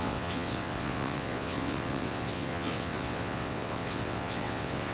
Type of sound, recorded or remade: remade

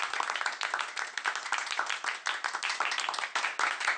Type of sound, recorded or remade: recorded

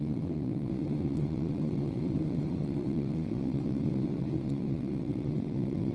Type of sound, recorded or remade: remade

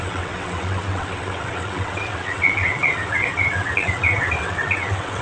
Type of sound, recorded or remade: remade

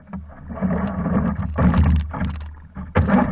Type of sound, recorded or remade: recorded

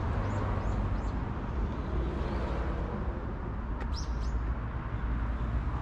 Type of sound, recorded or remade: recorded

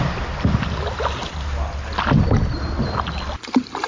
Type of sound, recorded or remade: recorded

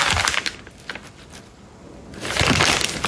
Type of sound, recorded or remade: recorded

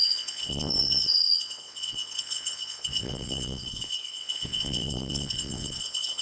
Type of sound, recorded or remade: remade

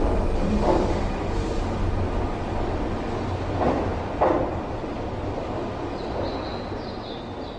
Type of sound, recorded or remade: recorded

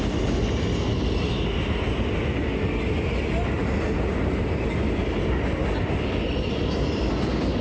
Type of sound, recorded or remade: recorded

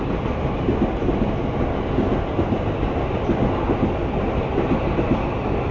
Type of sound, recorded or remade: recorded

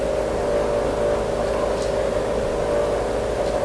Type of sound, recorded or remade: recorded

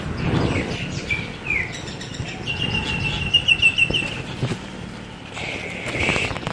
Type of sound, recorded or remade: recorded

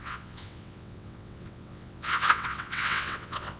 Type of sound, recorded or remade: remade